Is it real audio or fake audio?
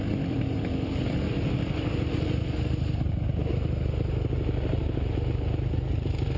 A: real